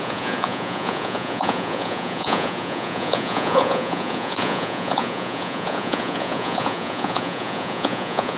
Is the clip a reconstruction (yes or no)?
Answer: yes